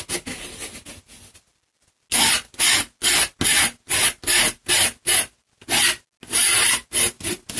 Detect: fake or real real